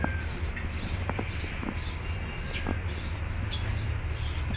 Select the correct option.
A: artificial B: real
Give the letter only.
B